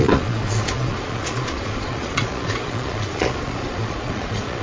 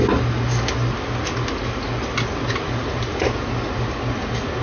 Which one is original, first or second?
second